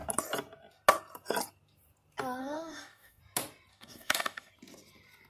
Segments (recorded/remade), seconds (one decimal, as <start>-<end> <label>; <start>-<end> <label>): 0.0-2.4 recorded; 2.4-3.2 remade; 3.2-3.7 recorded; 3.7-4.5 remade; 4.5-5.3 recorded